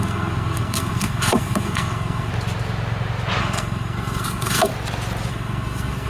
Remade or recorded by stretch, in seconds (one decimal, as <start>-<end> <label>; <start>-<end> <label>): 0.0-2.3 remade; 2.3-3.4 recorded; 3.4-4.7 remade; 4.7-5.3 recorded; 5.3-6.1 remade